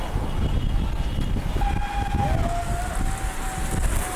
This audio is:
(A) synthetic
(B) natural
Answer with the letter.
B